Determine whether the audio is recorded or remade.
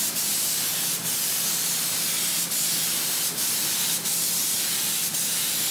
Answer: recorded